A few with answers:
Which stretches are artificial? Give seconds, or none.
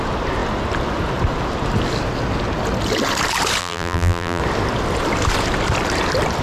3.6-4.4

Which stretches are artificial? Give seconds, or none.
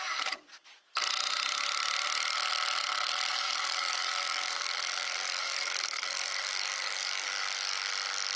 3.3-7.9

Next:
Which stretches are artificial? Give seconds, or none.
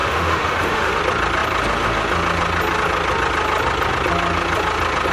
0.0-1.0